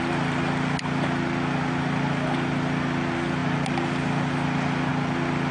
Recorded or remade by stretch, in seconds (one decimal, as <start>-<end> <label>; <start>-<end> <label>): 0.0-5.5 recorded